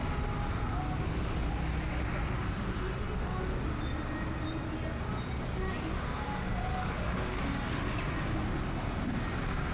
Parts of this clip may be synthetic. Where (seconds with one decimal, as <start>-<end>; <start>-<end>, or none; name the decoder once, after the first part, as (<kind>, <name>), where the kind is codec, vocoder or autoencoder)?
6.7-7.4 (codec, DAC)